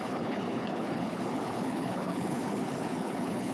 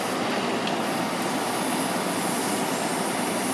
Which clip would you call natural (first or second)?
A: second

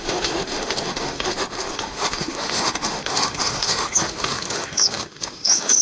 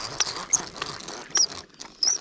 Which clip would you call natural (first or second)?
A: second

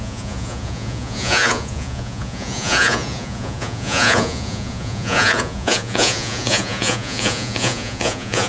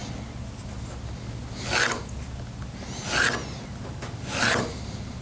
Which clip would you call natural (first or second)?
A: second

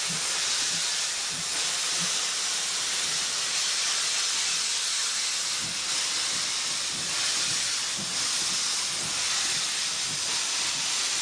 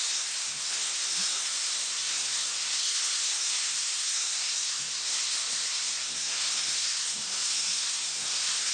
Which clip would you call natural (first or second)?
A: first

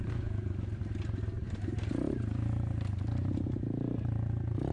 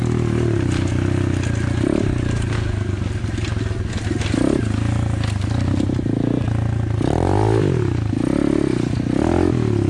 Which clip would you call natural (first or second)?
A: second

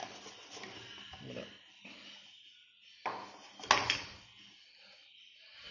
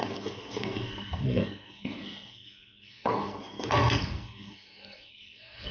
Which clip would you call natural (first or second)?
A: first